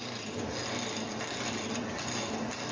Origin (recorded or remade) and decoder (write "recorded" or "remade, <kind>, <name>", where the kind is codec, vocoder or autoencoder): recorded